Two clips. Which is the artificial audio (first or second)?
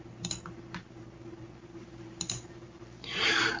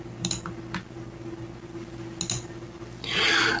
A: first